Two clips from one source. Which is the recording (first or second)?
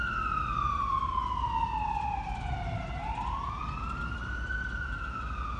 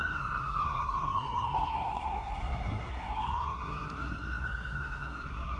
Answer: first